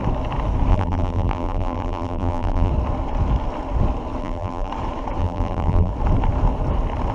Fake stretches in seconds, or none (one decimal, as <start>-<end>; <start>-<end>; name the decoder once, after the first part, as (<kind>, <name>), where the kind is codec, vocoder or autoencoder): 0.7-2.7 (vocoder, BigVGAN v2); 4.2-4.7; 5.2-5.9